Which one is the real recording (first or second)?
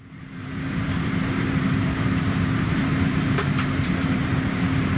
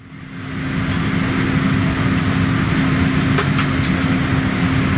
second